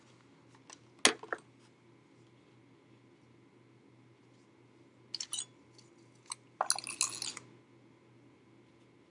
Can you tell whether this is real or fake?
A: real